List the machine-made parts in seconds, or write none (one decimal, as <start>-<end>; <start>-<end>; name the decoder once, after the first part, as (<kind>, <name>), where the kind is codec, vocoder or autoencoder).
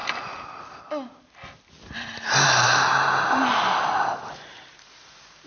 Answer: 3.3-5.5 (vocoder, BigVGAN v2)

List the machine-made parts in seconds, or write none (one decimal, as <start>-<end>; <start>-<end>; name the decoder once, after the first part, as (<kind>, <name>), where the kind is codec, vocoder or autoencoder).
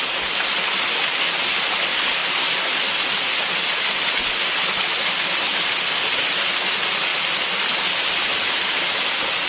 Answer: none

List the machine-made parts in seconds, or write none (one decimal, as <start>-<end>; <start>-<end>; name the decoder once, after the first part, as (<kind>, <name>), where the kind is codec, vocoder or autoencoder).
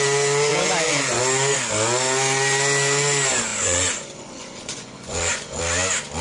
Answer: 0.5-1.2 (vocoder, Vocos); 3.5-5.6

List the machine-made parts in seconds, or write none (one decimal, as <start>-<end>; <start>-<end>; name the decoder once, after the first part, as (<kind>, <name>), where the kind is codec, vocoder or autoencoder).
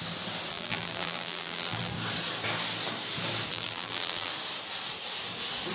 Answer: 0.5-1.9 (vocoder, BigVGAN v2); 3.5-4.3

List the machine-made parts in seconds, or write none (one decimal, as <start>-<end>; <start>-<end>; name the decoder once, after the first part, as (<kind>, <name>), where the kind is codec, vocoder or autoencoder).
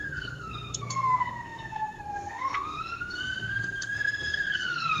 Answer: 0.0-5.0 (codec, SNAC)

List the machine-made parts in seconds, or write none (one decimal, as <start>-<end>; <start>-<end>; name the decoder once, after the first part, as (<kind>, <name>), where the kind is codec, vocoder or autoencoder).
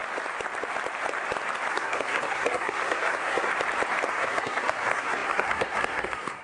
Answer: 1.7-3.5 (codec, SNAC); 4.1-6.4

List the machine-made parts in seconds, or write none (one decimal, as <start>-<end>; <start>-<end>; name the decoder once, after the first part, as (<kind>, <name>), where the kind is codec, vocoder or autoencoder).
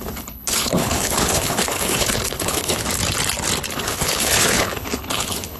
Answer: 0.0-2.8 (codec, HILCodec); 3.7-5.6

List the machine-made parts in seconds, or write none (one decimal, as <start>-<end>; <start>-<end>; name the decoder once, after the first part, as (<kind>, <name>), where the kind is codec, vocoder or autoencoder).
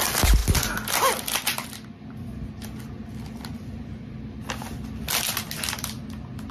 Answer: none